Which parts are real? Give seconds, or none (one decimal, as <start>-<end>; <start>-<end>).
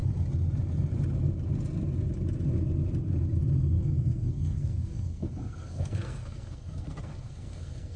0.0-3.8